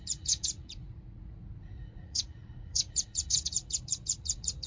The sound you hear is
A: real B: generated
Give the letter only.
B